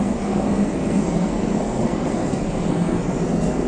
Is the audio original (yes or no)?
no